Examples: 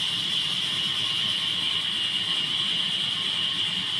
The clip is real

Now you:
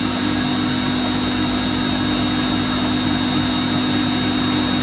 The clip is real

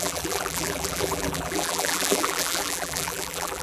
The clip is fake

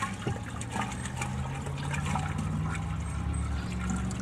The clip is real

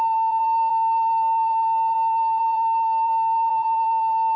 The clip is fake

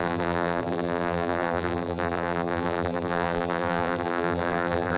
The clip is fake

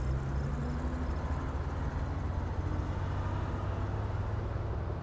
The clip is real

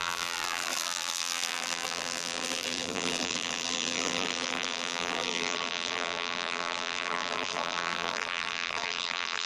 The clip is fake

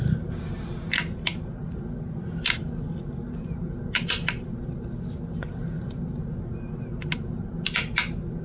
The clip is real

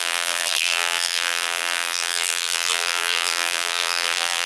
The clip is fake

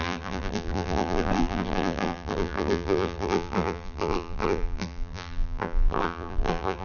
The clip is fake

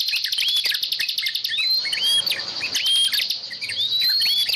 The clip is real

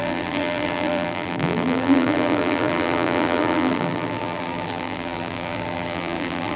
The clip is fake